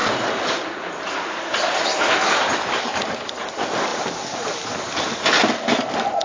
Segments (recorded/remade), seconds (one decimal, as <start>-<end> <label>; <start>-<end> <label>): 0.0-6.2 recorded

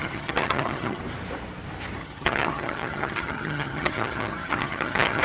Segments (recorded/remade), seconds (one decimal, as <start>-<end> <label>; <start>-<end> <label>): 0.0-1.0 remade; 1.0-2.0 recorded; 2.0-5.2 remade

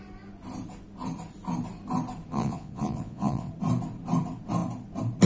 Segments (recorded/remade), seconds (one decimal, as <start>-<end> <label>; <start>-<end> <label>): 0.0-2.3 recorded; 2.3-3.5 remade; 3.5-5.2 recorded

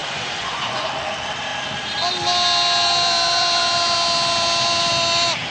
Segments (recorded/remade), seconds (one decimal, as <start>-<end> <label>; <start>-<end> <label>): 0.0-0.9 remade; 0.9-5.5 recorded

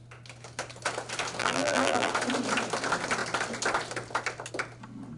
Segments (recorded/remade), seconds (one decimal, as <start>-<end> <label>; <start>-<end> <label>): 0.0-1.4 recorded; 1.4-2.1 remade; 2.1-5.2 recorded

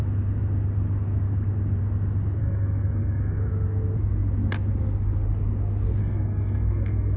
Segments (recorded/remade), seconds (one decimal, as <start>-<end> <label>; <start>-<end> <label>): 0.0-2.4 recorded; 2.4-3.5 remade; 3.5-6.0 recorded; 6.0-7.2 remade